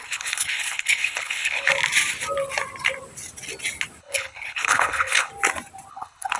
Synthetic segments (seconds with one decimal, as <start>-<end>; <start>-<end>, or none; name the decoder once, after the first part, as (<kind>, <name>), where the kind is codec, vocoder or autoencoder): 0.0-1.7 (codec, HILCodec); 4.0-5.3; 5.9-6.4

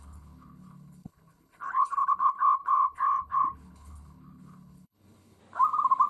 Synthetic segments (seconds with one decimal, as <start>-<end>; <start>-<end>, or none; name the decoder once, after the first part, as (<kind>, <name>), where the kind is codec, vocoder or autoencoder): 0.0-5.4 (codec, HILCodec)